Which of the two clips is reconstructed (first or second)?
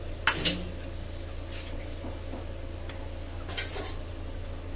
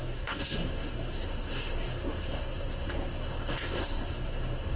second